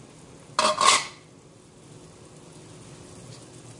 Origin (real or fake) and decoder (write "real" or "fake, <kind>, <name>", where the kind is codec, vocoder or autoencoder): real